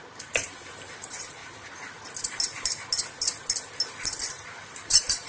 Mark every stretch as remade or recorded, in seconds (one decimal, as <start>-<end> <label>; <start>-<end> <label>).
0.0-1.4 remade; 1.4-4.6 recorded; 4.6-5.3 remade